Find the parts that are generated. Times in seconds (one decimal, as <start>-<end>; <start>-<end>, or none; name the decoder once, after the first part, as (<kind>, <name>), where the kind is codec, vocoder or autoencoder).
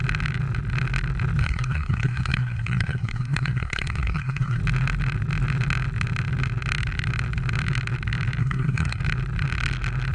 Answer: 1.4-4.6 (codec, SNAC); 8.4-9.0